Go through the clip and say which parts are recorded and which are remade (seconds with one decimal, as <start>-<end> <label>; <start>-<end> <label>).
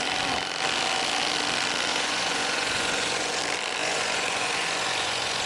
0.0-1.9 recorded; 1.9-3.4 remade; 3.4-3.8 recorded; 3.8-5.5 remade